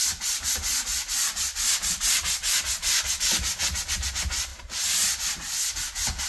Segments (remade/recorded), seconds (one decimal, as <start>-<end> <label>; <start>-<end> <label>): 0.0-0.9 remade; 0.9-3.2 recorded; 3.2-4.5 remade; 4.5-6.3 recorded